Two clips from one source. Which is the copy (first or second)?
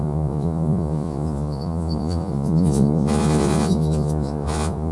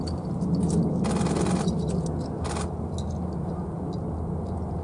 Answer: first